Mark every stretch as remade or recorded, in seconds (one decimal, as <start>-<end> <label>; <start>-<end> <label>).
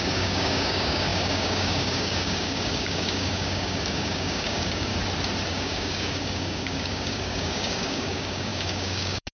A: 0.0-4.9 remade; 4.9-5.5 recorded; 5.5-9.3 remade